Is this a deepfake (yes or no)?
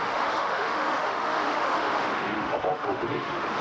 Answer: yes